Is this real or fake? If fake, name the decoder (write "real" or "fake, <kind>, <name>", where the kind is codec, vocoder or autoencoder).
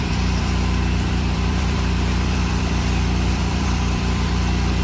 fake, vocoder, BigVGAN v2